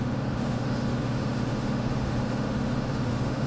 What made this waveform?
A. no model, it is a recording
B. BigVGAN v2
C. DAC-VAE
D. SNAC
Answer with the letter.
C